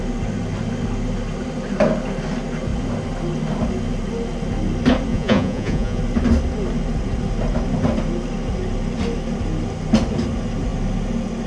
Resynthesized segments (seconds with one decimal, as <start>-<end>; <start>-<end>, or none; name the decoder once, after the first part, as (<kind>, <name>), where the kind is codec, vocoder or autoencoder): 5.1-6.0 (vocoder, Vocos)